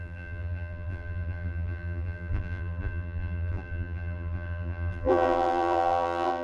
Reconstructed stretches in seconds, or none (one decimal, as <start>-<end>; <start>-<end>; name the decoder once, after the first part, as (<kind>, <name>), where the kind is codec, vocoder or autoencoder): 0.0-6.4 (vocoder, BigVGAN v2)